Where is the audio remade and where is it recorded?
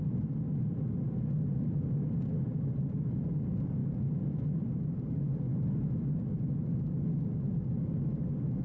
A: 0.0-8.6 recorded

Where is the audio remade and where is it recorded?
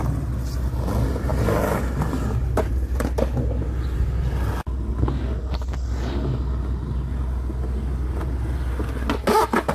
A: 0.0-9.7 recorded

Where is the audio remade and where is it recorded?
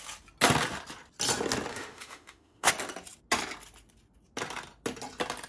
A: 0.0-1.7 recorded; 1.7-2.7 remade; 2.7-5.5 recorded